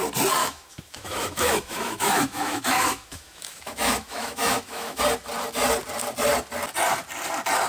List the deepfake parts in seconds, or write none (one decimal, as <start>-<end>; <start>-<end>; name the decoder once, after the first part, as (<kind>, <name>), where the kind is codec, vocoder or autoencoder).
0.4-5.0 (autoencoder, DAC-VAE)